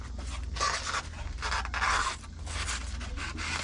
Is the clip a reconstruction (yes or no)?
no